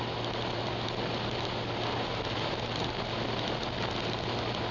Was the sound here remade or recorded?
recorded